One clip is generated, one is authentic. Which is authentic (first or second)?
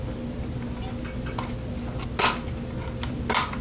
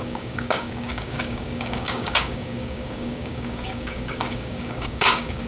first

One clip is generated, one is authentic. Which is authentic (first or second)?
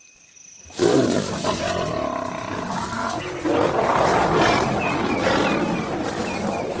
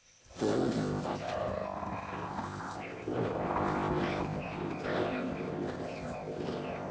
first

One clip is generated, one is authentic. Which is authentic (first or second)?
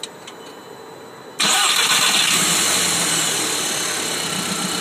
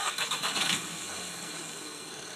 first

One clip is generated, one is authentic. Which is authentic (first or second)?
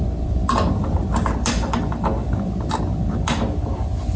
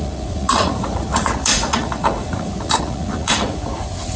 first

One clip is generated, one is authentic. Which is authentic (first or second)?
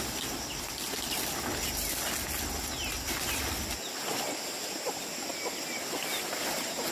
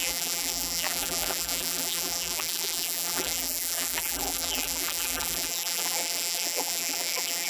first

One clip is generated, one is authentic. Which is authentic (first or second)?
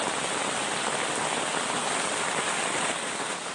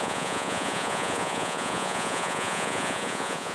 first